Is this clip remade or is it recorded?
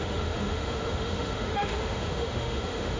remade